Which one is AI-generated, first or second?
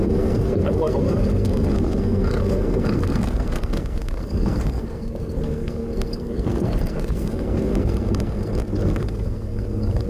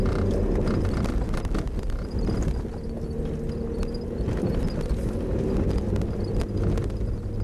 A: first